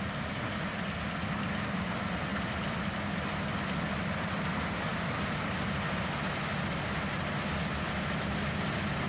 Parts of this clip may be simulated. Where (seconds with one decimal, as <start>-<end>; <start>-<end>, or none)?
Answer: none